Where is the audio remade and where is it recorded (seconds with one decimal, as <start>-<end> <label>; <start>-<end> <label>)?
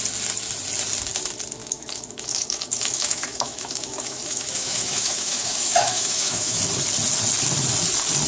0.0-1.6 recorded; 1.6-6.6 remade; 6.6-8.3 recorded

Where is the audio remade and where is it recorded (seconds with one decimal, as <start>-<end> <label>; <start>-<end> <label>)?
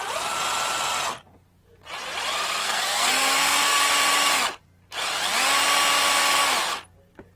0.0-2.6 recorded; 2.6-3.9 remade; 3.9-7.4 recorded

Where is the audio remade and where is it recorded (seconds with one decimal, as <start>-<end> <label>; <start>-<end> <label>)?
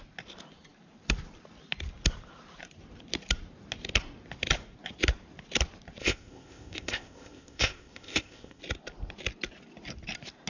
0.0-6.0 recorded; 6.0-8.6 remade; 8.6-10.5 recorded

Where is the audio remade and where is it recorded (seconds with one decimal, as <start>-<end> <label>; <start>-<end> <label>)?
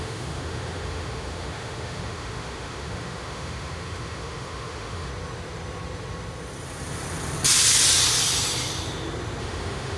0.0-5.1 remade; 5.1-9.4 recorded; 9.4-10.0 remade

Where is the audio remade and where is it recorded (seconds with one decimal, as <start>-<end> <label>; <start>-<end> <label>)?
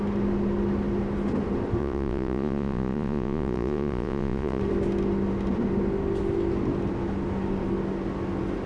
0.0-1.8 recorded; 1.8-4.6 remade; 4.6-8.7 recorded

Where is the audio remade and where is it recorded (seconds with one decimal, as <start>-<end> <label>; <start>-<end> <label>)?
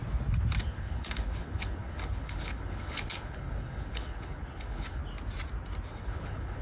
0.0-0.6 recorded; 0.6-5.0 remade; 5.0-5.9 recorded; 5.9-6.6 remade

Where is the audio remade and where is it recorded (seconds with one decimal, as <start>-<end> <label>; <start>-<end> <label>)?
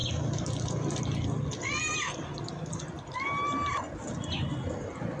0.0-5.2 recorded